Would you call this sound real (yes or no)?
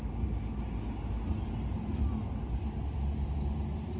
yes